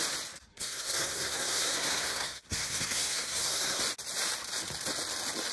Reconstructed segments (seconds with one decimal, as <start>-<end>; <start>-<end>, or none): 0.5-3.8